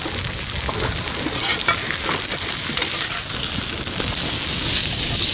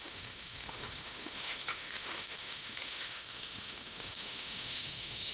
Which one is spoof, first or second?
second